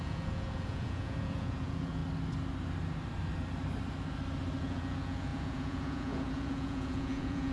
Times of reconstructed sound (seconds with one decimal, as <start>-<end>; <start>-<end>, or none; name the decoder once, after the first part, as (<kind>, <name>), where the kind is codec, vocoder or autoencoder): 0.0-2.0 (vocoder, Vocos); 4.6-7.5